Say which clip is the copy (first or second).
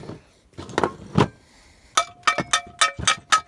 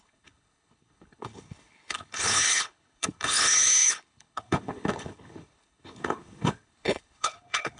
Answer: second